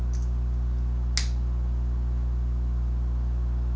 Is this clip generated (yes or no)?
no